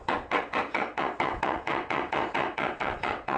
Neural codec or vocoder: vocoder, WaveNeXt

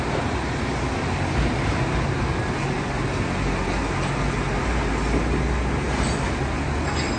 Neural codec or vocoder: none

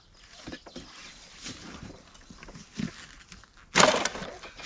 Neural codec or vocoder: none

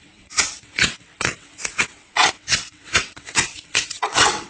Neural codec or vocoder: vocoder, WaveNeXt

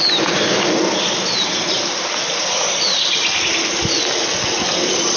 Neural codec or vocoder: none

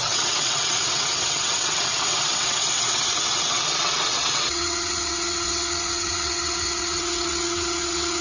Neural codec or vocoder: vocoder, WaveNeXt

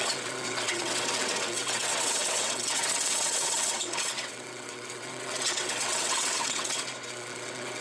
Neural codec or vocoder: vocoder, WaveNeXt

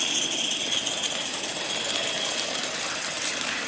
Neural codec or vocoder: none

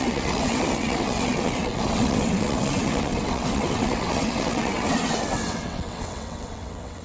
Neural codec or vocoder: vocoder, WaveNeXt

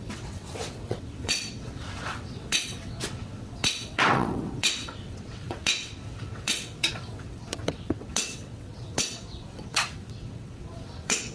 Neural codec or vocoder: vocoder, WaveNeXt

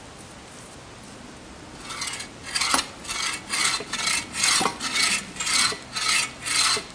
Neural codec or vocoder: none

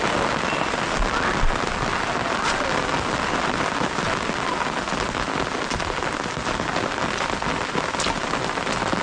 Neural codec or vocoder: none